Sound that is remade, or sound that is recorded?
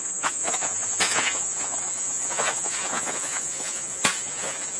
remade